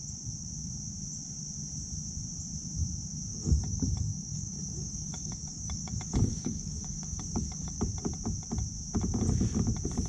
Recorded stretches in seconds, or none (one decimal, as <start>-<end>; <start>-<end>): 0.0-3.3; 7.8-10.1